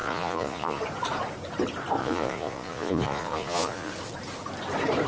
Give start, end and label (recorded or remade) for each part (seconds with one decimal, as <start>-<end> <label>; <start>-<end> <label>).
0.0-0.8 remade; 0.8-2.0 recorded; 2.0-3.9 remade; 3.9-5.1 recorded